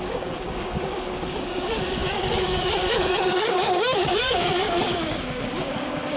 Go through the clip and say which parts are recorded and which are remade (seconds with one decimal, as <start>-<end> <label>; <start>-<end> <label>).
0.0-6.2 remade